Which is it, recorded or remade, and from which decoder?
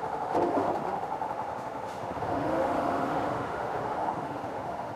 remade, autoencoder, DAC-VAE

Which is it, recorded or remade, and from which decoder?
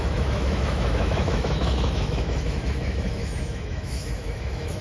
remade, autoencoder, DAC-VAE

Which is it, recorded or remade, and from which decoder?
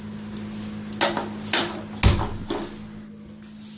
recorded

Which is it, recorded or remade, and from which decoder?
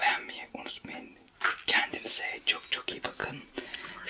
recorded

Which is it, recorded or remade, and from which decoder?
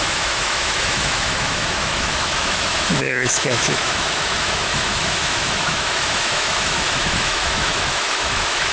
remade, autoencoder, DAC-VAE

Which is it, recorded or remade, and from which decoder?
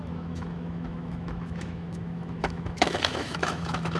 remade, autoencoder, DAC-VAE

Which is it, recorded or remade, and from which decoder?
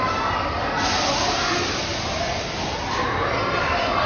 recorded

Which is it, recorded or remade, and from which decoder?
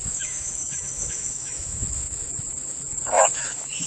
remade, autoencoder, DAC-VAE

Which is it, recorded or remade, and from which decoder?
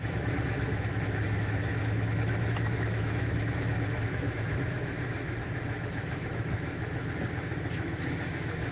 remade, autoencoder, DAC-VAE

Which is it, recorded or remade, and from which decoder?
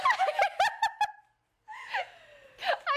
recorded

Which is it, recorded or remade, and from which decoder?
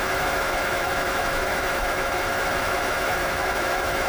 remade, autoencoder, DAC-VAE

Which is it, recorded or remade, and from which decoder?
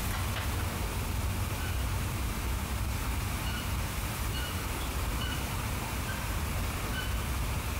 recorded